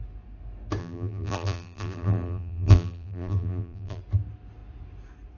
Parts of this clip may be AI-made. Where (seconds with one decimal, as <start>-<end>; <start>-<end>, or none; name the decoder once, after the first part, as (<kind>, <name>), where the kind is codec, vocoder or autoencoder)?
0.8-4.0 (vocoder, BigVGAN v2)